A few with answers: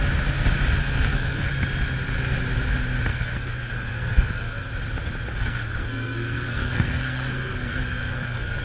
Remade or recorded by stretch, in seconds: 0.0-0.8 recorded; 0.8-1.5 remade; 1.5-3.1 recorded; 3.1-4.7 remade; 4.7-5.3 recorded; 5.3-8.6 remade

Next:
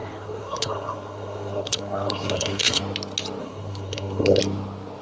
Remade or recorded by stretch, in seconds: 0.0-2.8 remade; 2.8-3.4 recorded; 3.4-4.4 remade; 4.4-5.0 recorded

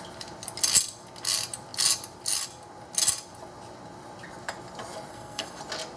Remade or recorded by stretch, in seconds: 0.0-5.1 recorded; 5.1-5.6 remade; 5.6-6.0 recorded

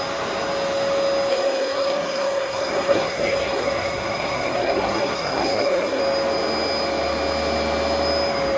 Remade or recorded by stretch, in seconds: 0.0-1.3 recorded; 1.3-6.0 remade; 6.0-8.6 recorded

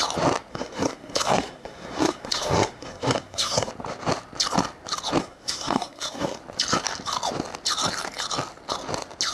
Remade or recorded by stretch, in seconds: 0.0-0.5 recorded; 0.5-3.7 remade; 3.7-5.2 recorded; 5.2-6.4 remade; 6.4-9.3 recorded

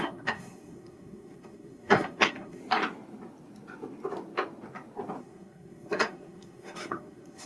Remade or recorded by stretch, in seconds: 0.0-2.6 remade; 2.6-5.2 recorded; 5.2-7.5 remade

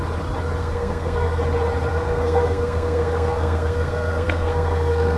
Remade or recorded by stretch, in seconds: 0.0-0.6 recorded; 0.6-1.4 remade; 1.4-1.9 recorded; 1.9-5.2 remade

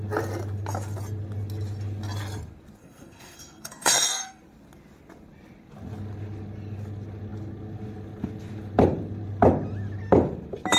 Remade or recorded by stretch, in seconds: 0.0-2.8 recorded; 2.8-4.4 remade; 4.4-10.8 recorded